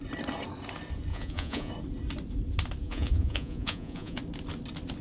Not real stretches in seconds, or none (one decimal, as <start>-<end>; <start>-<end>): 1.1-1.7; 2.8-4.2